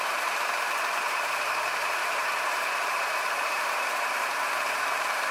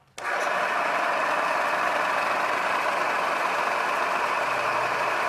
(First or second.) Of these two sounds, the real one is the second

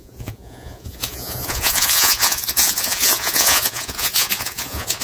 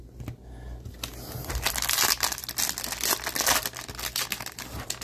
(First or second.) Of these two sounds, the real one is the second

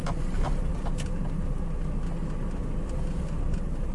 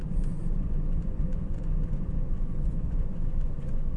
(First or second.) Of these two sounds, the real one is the first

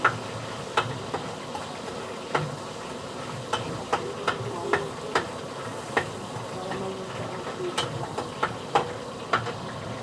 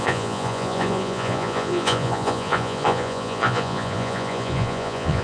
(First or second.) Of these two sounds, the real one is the first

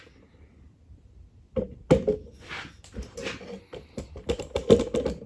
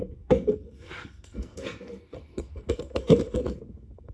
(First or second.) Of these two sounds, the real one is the first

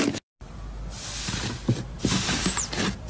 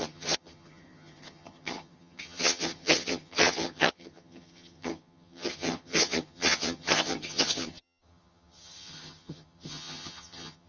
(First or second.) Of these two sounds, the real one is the first